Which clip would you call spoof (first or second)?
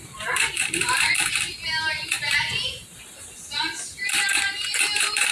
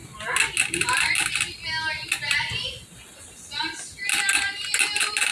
first